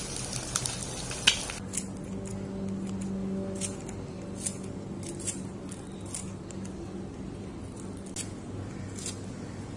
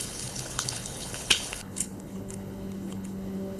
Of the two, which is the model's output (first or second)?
second